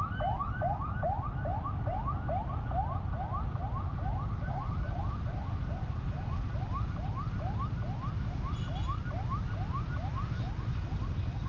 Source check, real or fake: real